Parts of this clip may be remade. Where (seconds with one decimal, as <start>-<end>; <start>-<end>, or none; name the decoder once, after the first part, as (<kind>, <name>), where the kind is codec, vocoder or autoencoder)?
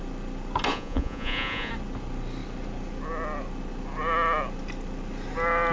0.7-1.7 (vocoder, Vocos)